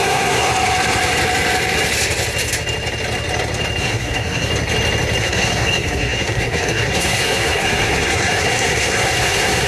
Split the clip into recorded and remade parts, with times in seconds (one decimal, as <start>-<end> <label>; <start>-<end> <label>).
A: 0.0-0.5 remade; 0.5-3.8 recorded; 3.8-4.5 remade; 4.5-5.2 recorded; 5.2-9.7 remade